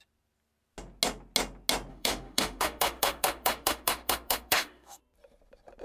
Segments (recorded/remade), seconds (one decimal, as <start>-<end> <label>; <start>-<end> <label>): 0.0-1.9 recorded; 1.9-5.0 remade; 5.0-5.8 recorded